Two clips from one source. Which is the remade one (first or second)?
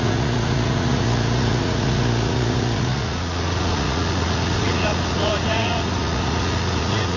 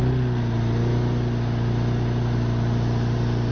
first